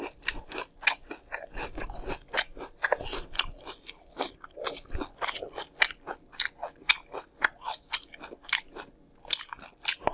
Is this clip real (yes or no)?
yes